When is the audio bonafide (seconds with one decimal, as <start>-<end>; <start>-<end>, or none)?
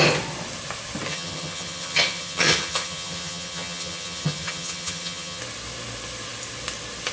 0.0-1.1; 5.4-7.1